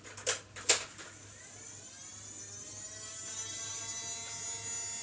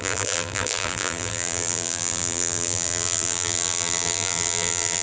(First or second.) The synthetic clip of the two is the second